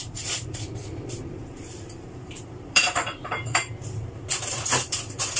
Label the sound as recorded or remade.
remade